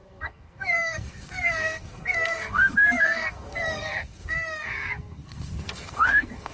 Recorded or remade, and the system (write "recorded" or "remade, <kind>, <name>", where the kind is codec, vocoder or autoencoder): remade, codec, SNAC